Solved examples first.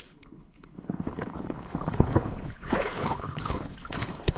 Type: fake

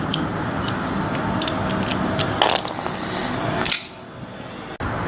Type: real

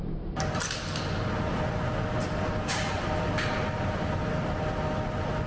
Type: real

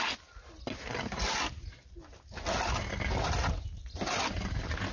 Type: real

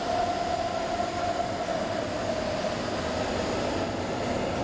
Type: real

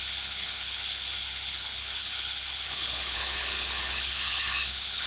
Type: fake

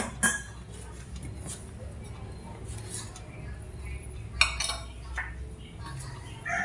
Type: real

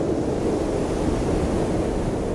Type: real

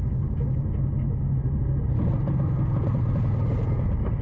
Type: real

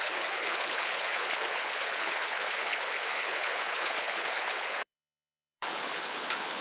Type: fake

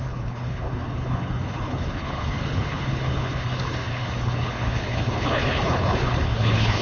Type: fake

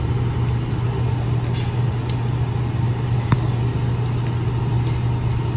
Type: real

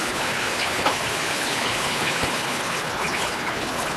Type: fake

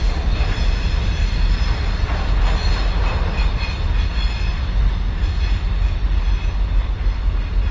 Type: real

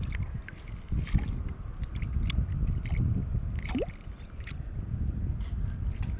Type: real